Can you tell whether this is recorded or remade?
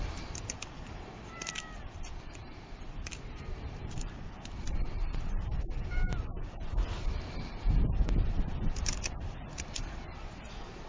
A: remade